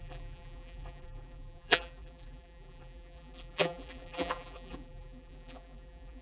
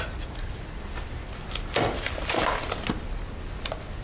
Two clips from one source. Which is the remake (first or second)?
first